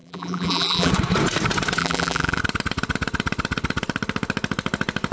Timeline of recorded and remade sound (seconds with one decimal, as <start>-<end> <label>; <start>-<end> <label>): 0.0-0.9 remade; 0.9-1.8 recorded; 1.8-2.4 remade; 2.4-5.1 recorded